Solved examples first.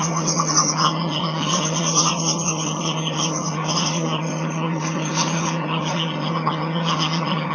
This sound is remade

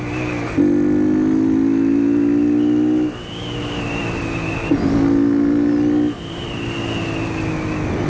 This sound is recorded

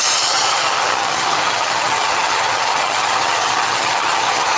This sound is remade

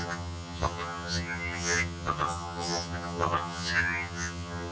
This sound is remade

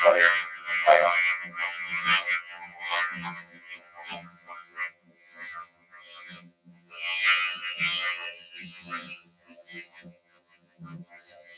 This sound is remade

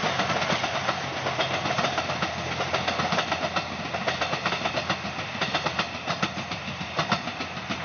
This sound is recorded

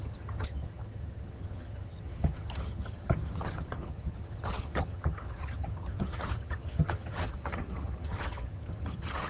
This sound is remade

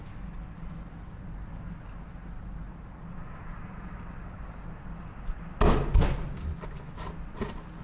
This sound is recorded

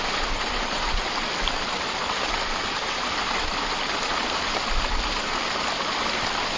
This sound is recorded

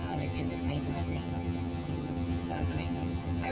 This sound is remade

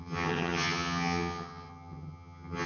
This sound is remade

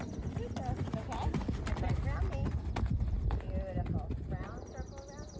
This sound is recorded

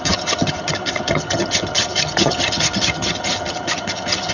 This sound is remade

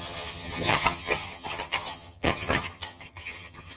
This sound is remade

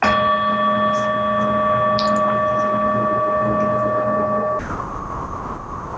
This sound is recorded